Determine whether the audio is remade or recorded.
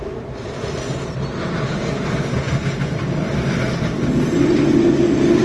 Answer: recorded